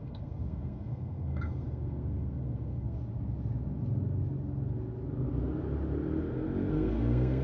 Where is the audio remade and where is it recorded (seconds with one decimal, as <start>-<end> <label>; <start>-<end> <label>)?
0.0-3.0 remade; 3.0-6.7 recorded; 6.7-7.4 remade